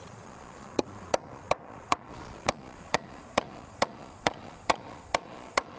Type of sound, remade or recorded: remade